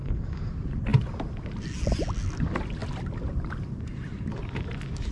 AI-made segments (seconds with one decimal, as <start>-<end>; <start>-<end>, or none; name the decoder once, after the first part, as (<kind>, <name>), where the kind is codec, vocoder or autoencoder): 0.0-0.5 (codec, SNAC)